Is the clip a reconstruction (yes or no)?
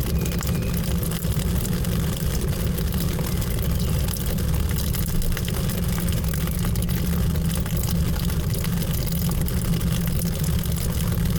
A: no